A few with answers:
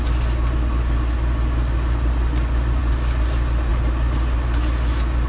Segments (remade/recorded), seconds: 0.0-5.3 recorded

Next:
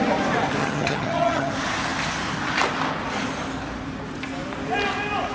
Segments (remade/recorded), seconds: 0.0-0.6 recorded; 0.6-1.5 remade; 1.5-5.3 recorded

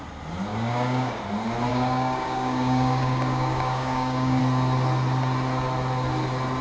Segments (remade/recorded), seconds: 0.0-0.5 recorded; 0.5-1.2 remade; 1.2-1.7 recorded; 1.7-4.4 remade; 4.4-6.6 recorded

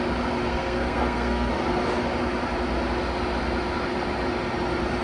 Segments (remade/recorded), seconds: 0.0-0.5 recorded; 0.5-1.5 remade; 1.5-5.0 recorded

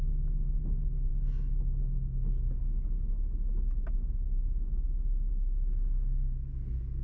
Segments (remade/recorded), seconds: 0.0-7.0 recorded

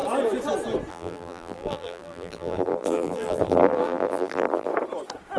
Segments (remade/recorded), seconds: 0.0-0.9 recorded; 0.9-4.7 remade; 4.7-5.4 recorded

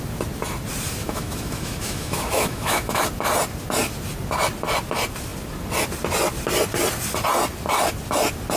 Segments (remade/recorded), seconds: 0.0-1.0 recorded; 1.0-3.0 remade; 3.0-8.6 recorded

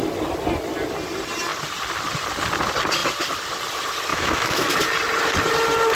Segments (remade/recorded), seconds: 0.0-4.1 recorded; 4.1-4.7 remade; 4.7-6.0 recorded